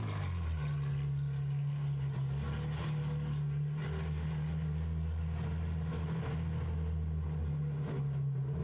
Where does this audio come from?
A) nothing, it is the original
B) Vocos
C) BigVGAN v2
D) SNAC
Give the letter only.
A